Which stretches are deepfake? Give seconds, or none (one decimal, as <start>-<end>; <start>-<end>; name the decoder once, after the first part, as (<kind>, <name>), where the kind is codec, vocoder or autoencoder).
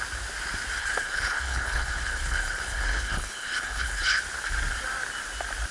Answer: 0.8-4.2 (codec, HILCodec)